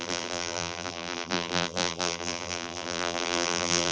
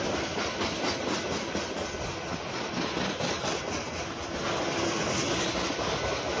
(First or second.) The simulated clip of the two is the first